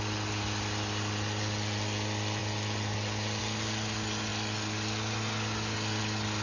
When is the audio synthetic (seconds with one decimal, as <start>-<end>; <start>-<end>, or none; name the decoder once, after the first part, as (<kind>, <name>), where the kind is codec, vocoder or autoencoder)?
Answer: none